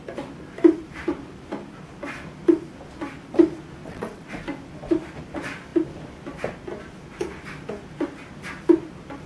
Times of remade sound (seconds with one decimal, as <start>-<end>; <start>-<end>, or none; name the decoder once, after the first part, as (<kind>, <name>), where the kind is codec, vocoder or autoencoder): 3.8-4.3 (vocoder, WaveNeXt)